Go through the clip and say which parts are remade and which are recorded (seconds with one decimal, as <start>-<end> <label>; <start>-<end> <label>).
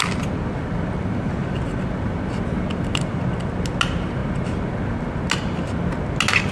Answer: 0.0-6.5 recorded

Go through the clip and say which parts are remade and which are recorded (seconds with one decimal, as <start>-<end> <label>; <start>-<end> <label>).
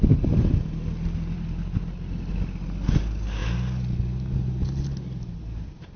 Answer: 0.0-6.0 recorded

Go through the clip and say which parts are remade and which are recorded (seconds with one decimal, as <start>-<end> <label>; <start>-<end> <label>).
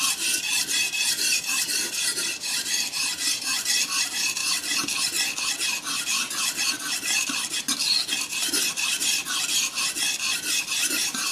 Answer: 0.0-4.4 remade; 4.4-8.1 recorded; 8.1-9.2 remade; 9.2-10.8 recorded; 10.8-11.3 remade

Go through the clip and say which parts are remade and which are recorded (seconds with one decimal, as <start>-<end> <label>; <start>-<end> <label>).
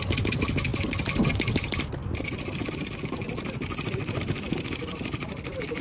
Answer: 0.0-5.8 recorded